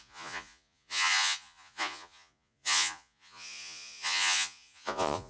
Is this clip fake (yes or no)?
yes